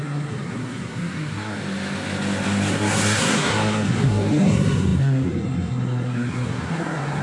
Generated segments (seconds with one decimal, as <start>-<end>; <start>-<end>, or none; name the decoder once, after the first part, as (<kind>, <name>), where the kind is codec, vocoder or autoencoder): 0.0-1.6 (codec, SNAC); 2.7-7.2